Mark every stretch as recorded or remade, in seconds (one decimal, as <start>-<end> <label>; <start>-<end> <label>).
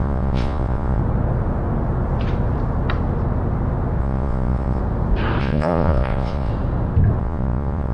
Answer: 0.0-1.0 remade; 1.0-4.0 recorded; 4.0-4.8 remade; 4.8-5.4 recorded; 5.4-6.5 remade; 6.5-7.2 recorded; 7.2-7.9 remade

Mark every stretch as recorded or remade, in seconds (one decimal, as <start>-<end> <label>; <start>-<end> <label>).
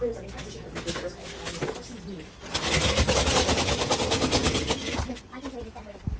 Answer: 0.0-4.4 recorded; 4.4-5.0 remade; 5.0-6.2 recorded